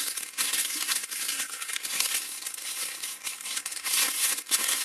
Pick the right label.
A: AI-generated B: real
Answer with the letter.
A